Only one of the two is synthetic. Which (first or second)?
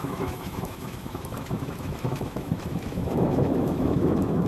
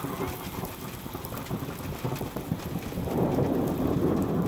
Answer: first